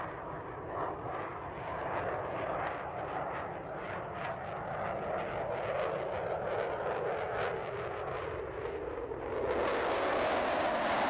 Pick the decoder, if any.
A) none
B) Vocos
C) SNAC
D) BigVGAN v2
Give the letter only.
A